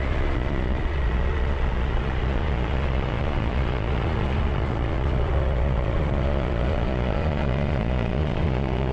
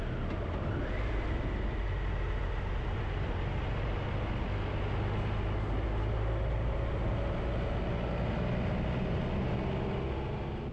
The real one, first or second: second